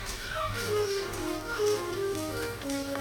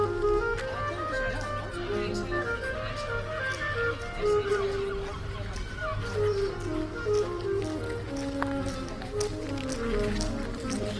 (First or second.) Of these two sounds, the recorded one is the second